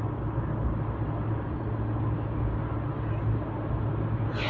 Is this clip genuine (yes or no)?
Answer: yes